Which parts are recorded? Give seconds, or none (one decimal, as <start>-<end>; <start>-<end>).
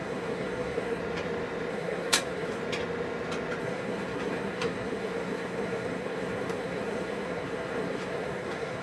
1.0-1.7; 2.6-3.6